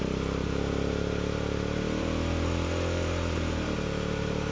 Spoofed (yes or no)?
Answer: yes